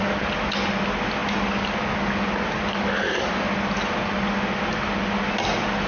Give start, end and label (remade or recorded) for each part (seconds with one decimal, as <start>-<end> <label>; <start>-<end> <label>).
0.0-5.9 recorded